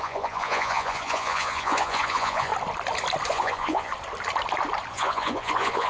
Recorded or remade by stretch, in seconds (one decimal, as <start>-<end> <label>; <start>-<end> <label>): 0.0-2.5 remade; 2.5-3.3 recorded; 3.3-3.9 remade; 3.9-4.9 recorded; 4.9-5.9 remade